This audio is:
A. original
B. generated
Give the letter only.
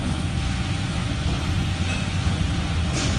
B